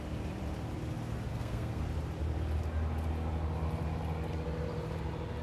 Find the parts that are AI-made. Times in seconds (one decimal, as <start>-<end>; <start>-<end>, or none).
1.3-1.8